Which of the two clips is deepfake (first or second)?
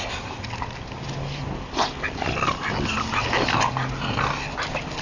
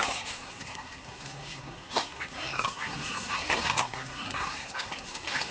second